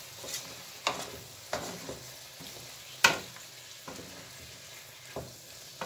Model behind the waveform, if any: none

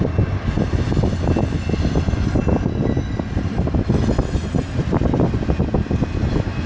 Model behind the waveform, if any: none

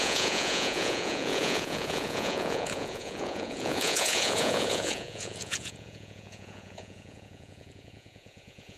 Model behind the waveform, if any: vocoder, Vocos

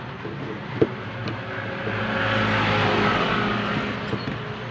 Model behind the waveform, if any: none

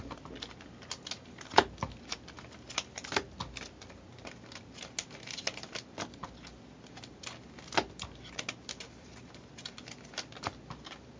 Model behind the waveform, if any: none